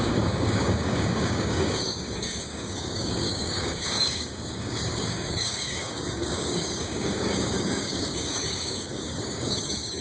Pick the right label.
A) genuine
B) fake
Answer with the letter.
B